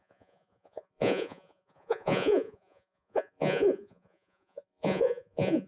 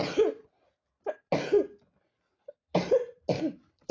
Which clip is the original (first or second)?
second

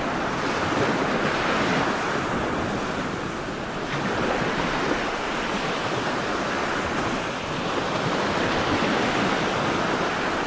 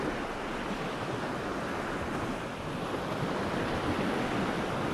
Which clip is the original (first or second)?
second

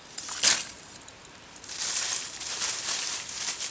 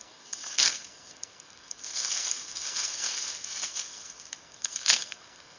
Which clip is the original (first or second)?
first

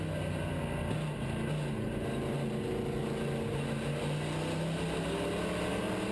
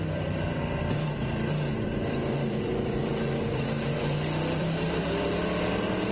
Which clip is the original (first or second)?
first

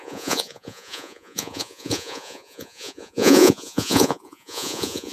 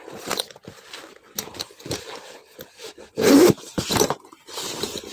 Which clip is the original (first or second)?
second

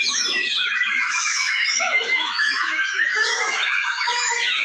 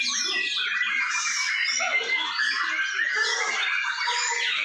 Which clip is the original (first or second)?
second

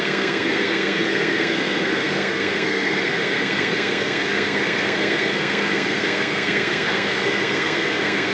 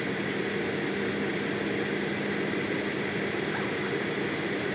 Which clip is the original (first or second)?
second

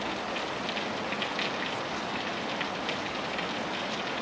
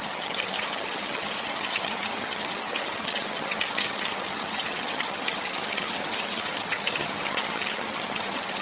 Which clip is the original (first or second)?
first